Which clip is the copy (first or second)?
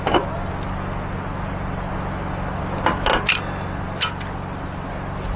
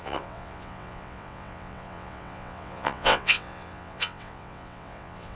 second